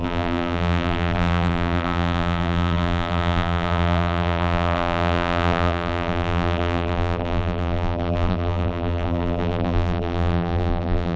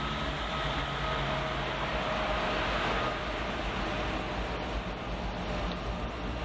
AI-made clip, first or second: first